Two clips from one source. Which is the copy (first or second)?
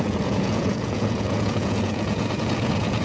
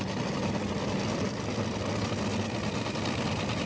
first